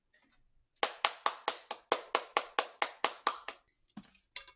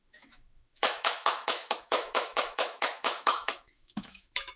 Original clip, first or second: first